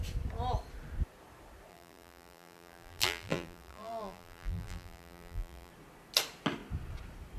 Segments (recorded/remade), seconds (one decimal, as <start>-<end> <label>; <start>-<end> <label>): 0.0-1.7 recorded; 1.7-5.7 remade; 5.7-7.4 recorded